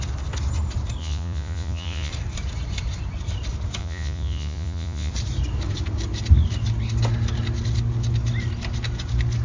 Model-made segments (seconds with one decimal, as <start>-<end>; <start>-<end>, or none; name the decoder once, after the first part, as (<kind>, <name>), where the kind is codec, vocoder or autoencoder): 1.0-2.1 (vocoder, Vocos); 3.8-5.1